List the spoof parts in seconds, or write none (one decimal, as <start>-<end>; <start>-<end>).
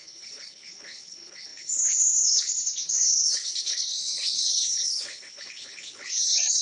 0.0-6.6